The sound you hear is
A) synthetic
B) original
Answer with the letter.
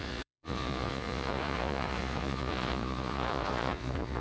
A